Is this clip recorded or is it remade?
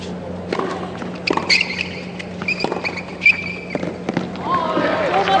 recorded